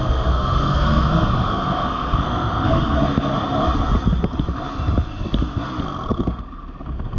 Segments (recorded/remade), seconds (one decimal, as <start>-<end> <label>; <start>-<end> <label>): 0.0-3.3 remade; 3.3-5.8 recorded; 5.8-7.2 remade